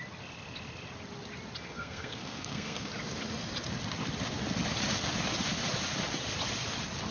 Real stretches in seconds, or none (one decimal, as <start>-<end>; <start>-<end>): 0.0-1.7; 2.9-7.1